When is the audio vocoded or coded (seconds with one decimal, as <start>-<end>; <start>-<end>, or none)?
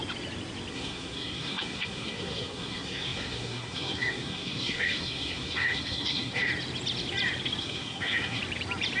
0.7-6.5; 7.6-8.4